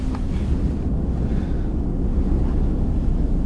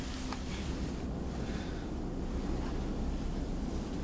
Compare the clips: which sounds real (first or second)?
second